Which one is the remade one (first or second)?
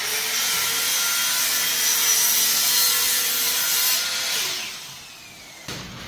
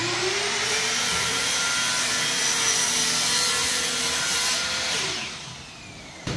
second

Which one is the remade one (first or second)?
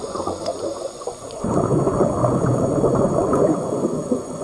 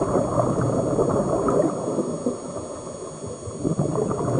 first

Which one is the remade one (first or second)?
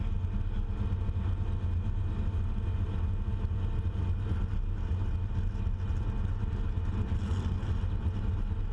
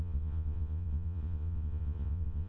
second